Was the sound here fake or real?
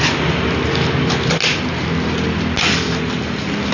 real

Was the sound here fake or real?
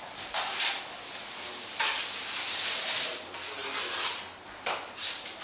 real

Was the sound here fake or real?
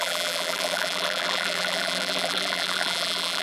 fake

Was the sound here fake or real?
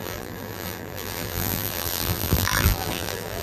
fake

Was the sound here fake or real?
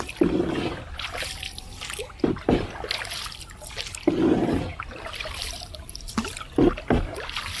real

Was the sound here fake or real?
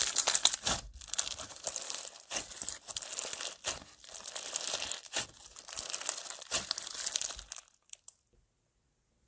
real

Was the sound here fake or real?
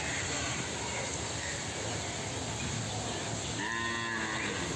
real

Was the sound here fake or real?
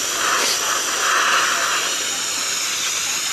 real